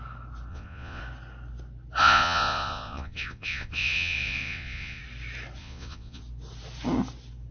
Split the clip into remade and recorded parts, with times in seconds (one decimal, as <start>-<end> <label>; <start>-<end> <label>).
0.0-0.5 recorded; 0.5-1.0 remade; 1.0-2.0 recorded; 2.0-5.0 remade; 5.0-5.6 recorded; 5.6-6.2 remade; 6.2-7.5 recorded